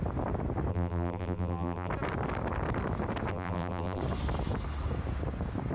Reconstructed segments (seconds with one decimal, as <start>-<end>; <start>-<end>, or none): 0.7-1.9; 3.3-4.0